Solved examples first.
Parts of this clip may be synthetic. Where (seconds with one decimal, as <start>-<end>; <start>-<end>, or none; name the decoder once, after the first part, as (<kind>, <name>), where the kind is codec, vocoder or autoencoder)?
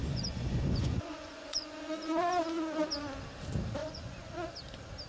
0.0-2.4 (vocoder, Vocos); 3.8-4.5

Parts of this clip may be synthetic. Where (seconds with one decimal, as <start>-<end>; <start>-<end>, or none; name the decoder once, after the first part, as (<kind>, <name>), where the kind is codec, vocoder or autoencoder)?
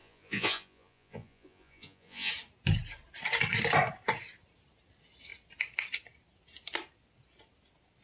0.0-2.3 (vocoder, Vocos)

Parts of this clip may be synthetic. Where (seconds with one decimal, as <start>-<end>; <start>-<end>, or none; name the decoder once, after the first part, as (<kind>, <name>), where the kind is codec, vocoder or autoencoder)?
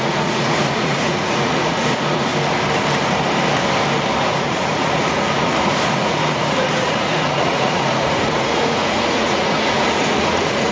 0.0-2.3 (vocoder, Vocos); 4.2-10.7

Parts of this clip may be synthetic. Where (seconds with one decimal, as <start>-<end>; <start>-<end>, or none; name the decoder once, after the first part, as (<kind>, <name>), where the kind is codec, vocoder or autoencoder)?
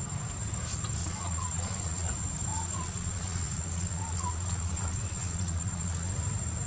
1.0-2.1 (vocoder, Vocos); 2.5-6.1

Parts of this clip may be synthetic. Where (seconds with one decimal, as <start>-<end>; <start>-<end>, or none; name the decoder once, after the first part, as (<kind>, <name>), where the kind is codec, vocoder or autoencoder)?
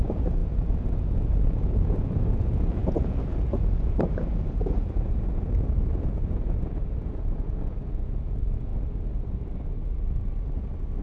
0.0-8.7 (vocoder, Vocos)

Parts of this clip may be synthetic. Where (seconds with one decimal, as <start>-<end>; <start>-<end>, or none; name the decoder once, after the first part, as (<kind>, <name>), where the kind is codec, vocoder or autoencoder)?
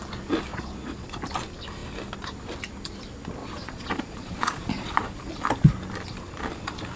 0.5-1.2 (vocoder, Vocos); 3.4-5.2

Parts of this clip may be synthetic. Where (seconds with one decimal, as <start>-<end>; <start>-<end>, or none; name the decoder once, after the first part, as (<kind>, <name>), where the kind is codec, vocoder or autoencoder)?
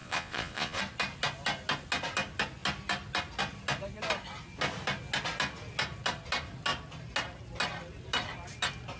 0.0-0.8 (vocoder, Vocos)